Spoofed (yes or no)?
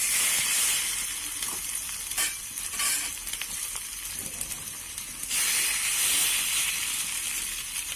no